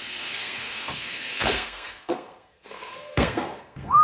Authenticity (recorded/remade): remade